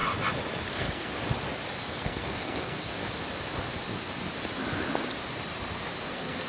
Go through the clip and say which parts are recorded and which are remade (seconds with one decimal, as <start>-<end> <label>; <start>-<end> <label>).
0.0-0.7 recorded; 0.7-1.1 remade; 1.1-1.9 recorded; 1.9-2.9 remade; 2.9-6.1 recorded; 6.1-6.5 remade